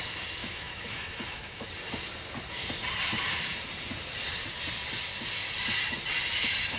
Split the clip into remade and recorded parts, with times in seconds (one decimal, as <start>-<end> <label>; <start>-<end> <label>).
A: 0.0-0.4 recorded; 0.4-1.7 remade; 1.7-6.8 recorded